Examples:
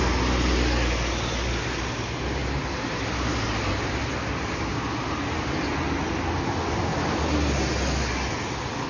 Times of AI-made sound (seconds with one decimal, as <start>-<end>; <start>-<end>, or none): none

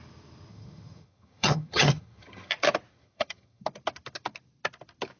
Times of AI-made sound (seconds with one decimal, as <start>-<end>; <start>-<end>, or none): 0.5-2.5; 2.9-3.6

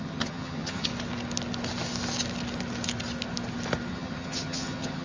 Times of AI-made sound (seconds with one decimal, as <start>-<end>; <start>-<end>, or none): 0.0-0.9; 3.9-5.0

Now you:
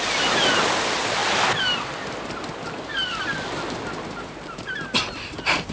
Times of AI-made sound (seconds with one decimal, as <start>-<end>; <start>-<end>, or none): none

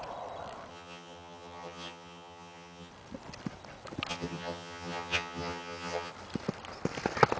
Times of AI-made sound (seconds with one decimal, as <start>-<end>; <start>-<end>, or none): 0.7-2.9; 4.1-6.1